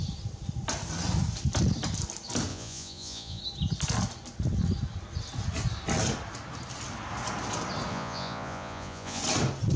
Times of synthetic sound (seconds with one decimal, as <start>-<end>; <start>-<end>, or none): 2.5-3.4; 7.9-9.2